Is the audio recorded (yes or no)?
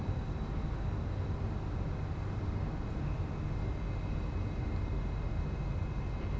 yes